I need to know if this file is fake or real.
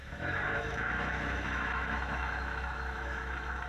fake